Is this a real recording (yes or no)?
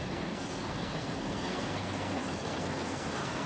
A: no